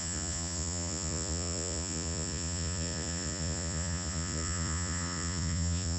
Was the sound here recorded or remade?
remade